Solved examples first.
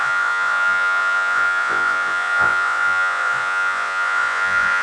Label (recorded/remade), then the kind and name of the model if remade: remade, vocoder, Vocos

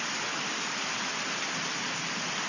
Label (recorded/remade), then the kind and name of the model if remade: recorded